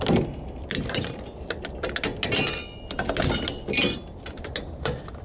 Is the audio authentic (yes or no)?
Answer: yes